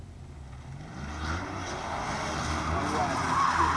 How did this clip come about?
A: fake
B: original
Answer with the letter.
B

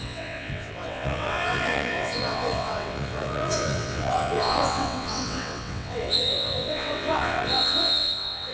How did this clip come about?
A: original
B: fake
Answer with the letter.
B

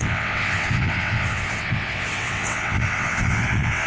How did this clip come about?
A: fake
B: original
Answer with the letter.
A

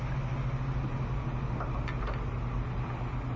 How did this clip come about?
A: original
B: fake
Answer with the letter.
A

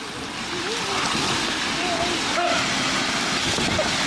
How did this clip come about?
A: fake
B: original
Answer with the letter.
B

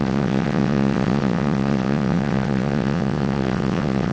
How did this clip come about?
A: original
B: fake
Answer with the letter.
B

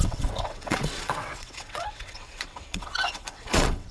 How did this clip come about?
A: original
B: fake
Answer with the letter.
B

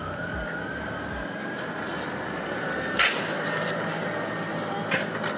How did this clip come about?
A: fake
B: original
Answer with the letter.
B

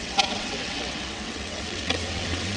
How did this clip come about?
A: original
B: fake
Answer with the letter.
B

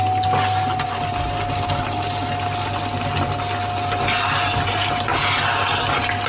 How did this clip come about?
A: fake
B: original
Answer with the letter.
B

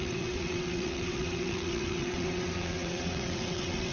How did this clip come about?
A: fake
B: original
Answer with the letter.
A